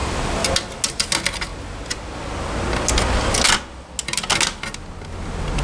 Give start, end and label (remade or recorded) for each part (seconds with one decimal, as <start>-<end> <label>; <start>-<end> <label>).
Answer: 0.0-5.6 recorded

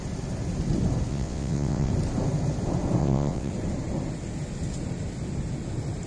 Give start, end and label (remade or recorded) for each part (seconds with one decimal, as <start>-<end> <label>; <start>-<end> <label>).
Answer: 0.0-1.1 recorded; 1.1-1.9 remade; 1.9-3.0 recorded; 3.0-3.5 remade; 3.5-6.1 recorded

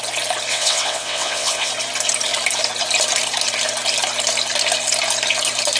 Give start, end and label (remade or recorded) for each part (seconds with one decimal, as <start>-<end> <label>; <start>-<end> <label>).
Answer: 0.0-0.5 recorded; 0.5-1.7 remade; 1.7-5.8 recorded

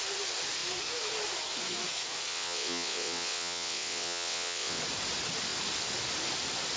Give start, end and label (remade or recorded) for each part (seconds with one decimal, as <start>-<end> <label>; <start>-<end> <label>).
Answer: 0.0-2.3 recorded; 2.3-4.8 remade; 4.8-6.8 recorded

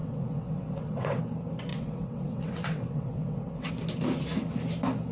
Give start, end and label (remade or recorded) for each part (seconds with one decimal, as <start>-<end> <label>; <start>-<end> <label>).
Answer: 0.0-1.2 remade; 1.2-1.7 recorded; 1.7-3.7 remade; 3.7-5.1 recorded